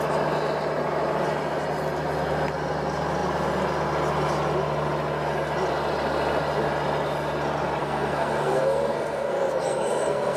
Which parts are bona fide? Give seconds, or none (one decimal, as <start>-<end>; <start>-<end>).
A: 0.0-7.8